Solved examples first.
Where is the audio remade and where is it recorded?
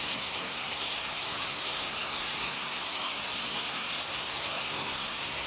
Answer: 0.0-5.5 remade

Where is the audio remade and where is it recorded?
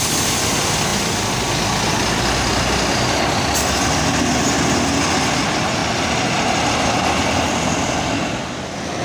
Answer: 0.0-9.0 recorded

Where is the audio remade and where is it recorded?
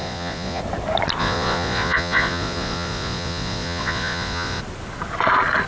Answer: 0.0-0.6 remade; 0.6-1.2 recorded; 1.2-4.6 remade; 4.6-5.7 recorded